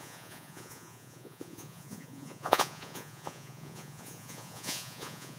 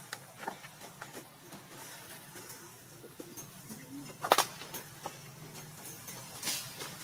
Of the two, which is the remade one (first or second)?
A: first